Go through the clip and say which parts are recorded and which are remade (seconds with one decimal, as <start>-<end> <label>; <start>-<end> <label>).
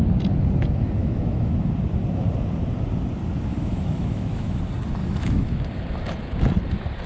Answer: 0.0-1.0 recorded; 1.0-1.5 remade; 1.5-3.5 recorded; 3.5-4.6 remade; 4.6-5.0 recorded; 5.0-5.6 remade; 5.6-7.1 recorded